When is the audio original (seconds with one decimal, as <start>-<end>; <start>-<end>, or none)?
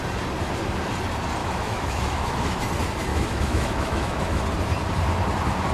0.0-1.4; 2.6-3.1; 4.4-5.7